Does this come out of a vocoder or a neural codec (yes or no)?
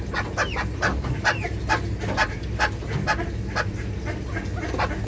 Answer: no